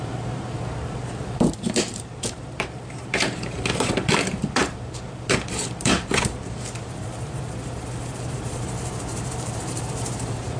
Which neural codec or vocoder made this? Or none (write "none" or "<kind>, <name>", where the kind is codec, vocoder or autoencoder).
vocoder, BigVGAN v2